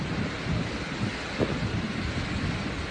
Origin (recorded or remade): recorded